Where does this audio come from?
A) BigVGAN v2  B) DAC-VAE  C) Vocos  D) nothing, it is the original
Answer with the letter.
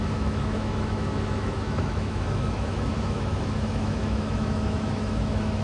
B